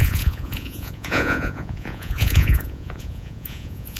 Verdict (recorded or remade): remade